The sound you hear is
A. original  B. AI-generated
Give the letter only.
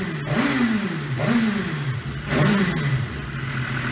A